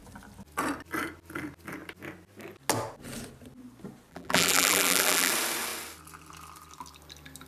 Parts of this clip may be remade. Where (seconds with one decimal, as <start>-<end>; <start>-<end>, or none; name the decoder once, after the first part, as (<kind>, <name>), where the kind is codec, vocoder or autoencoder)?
4.1-5.3 (vocoder, BigVGAN v2)